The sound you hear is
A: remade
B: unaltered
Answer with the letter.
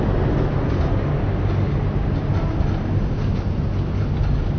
B